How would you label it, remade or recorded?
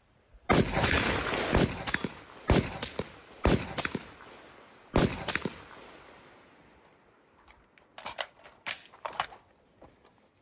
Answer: recorded